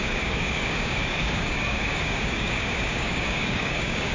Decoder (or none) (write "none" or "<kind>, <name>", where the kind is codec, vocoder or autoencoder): codec, DAC